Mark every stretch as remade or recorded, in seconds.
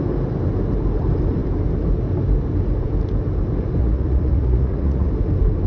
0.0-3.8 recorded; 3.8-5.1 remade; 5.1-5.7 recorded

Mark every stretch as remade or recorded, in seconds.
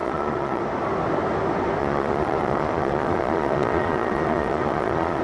0.0-0.6 remade; 0.6-1.8 recorded; 1.8-5.2 remade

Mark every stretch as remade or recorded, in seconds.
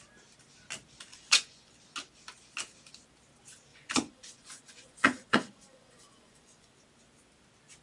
0.0-1.1 recorded; 1.1-1.7 remade; 1.7-3.7 recorded; 3.7-6.7 remade; 6.7-7.8 recorded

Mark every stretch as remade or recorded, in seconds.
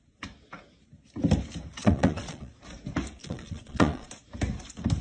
0.0-1.8 recorded; 1.8-2.5 remade; 2.5-3.2 recorded; 3.2-4.1 remade; 4.1-5.0 recorded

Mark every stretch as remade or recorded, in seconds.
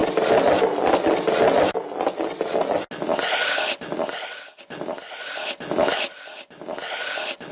0.0-7.5 recorded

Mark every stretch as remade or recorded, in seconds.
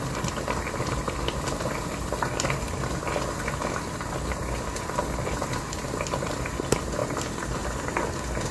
0.0-8.5 recorded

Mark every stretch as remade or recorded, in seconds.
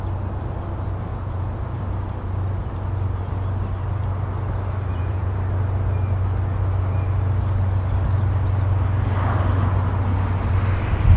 0.0-1.1 recorded; 1.1-1.8 remade; 1.8-4.9 recorded; 4.9-5.4 remade; 5.4-11.2 recorded